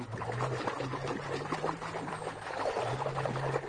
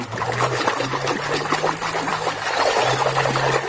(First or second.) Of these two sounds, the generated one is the first